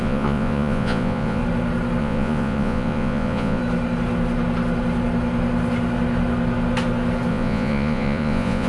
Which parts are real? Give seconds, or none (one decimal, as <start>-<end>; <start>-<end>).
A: 1.4-2.0; 3.6-7.3